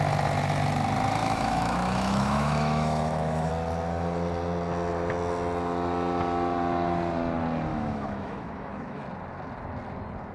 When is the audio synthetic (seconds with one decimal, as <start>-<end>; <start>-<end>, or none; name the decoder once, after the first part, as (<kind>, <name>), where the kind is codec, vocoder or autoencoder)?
1.2-3.5 (autoencoder, DAC-VAE); 7.7-9.0